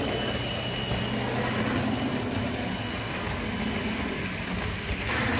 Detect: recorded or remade recorded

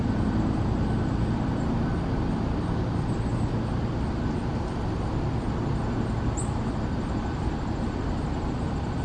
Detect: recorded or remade recorded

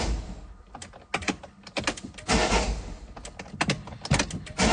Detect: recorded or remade recorded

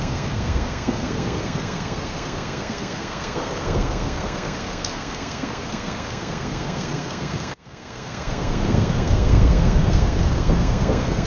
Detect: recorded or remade remade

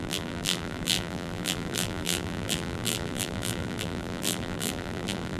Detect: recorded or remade remade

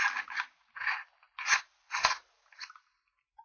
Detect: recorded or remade recorded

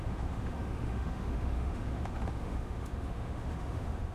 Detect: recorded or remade remade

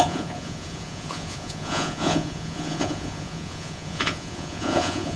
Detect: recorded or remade remade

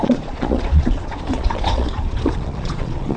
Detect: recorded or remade remade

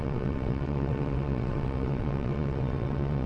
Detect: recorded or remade remade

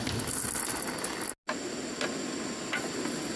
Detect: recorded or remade recorded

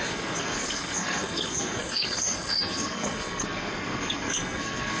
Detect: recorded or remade remade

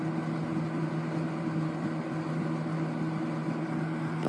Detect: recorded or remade recorded